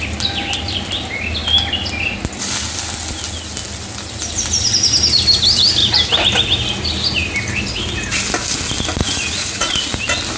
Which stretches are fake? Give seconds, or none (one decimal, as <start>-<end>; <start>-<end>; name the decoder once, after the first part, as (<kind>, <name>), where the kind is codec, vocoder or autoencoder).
9.0-9.8 (vocoder, Vocos)